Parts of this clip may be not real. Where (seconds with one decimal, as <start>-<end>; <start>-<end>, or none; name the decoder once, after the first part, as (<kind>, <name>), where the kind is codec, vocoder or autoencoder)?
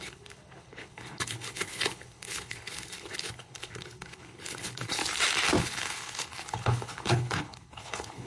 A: 0.0-5.0 (codec, HILCodec); 5.6-8.3